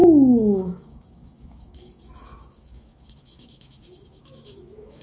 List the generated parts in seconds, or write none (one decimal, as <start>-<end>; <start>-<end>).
0.0-5.0